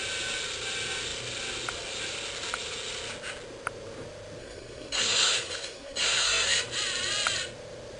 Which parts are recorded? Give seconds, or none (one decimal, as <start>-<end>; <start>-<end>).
0.0-4.4; 6.6-8.0